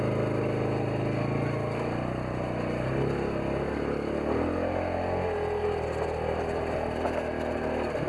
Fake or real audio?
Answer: real